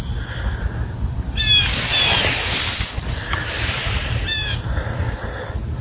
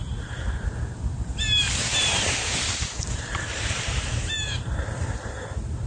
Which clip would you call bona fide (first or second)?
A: first